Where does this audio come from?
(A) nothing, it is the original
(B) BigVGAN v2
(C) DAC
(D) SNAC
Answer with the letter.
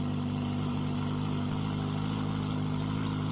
A